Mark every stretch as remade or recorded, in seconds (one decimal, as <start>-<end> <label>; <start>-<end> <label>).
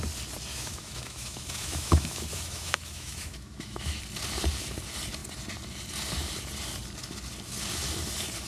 0.0-0.5 recorded; 0.5-4.0 remade; 4.0-8.5 recorded